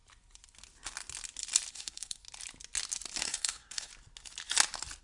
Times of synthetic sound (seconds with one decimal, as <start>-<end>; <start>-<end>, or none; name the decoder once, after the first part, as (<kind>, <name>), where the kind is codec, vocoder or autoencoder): 1.7-2.2 (codec, SNAC); 3.2-3.9